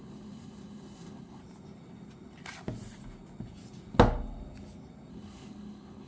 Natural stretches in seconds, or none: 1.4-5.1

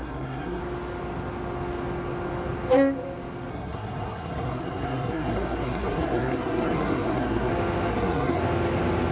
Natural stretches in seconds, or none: 0.6-3.5; 7.5-7.9; 8.4-9.1

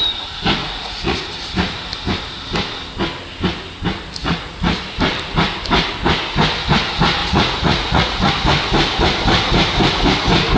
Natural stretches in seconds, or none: 0.0-0.6; 1.2-4.2; 4.8-7.2; 8.3-10.6

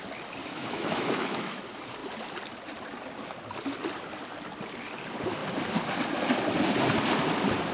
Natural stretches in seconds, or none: 0.0-0.4; 1.6-7.7

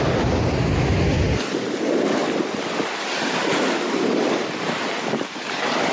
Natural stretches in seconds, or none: 2.2-4.3

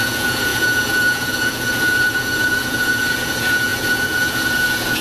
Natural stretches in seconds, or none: none